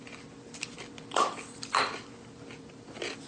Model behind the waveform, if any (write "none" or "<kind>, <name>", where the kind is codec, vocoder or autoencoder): vocoder, BigVGAN v2